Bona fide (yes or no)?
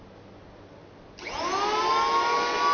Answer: yes